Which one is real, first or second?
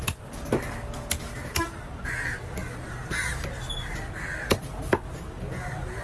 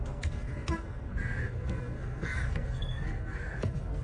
first